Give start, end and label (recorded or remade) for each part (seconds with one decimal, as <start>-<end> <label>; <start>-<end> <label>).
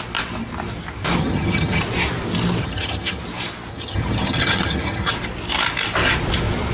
0.0-1.2 recorded; 1.2-1.8 remade; 1.8-2.6 recorded; 2.6-3.2 remade; 3.2-3.7 recorded; 3.7-5.1 remade; 5.1-6.7 recorded